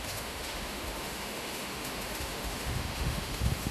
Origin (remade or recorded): remade